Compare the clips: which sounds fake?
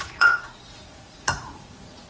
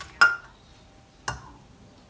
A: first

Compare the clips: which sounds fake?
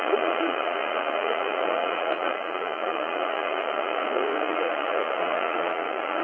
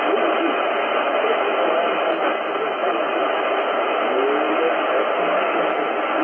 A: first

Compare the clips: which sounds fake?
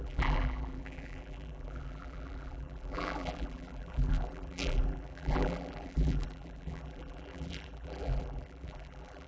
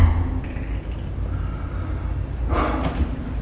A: first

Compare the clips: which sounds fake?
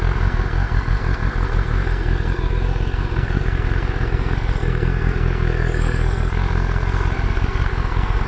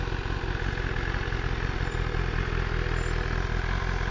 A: first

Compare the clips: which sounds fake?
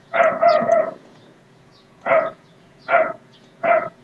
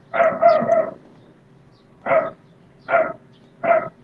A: first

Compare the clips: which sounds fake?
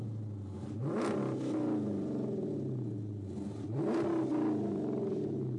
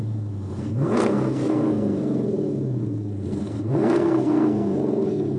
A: second